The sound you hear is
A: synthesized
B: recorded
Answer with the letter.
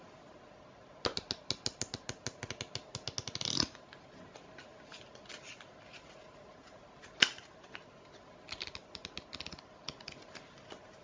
B